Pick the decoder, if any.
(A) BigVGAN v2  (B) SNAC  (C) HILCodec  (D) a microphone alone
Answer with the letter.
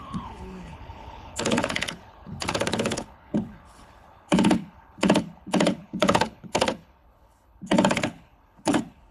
C